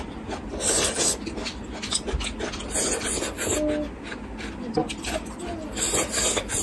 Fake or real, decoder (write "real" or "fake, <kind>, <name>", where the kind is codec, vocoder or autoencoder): real